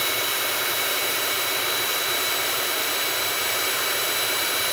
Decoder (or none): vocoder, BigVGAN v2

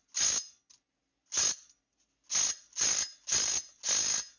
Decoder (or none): none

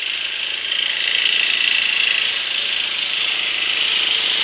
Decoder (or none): none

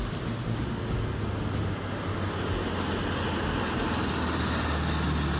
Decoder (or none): none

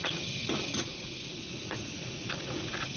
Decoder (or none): vocoder, Vocos